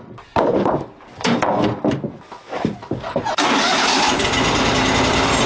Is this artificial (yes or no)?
no